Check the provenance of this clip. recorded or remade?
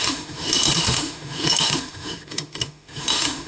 remade